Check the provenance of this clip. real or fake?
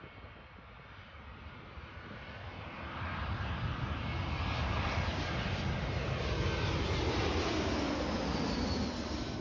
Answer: real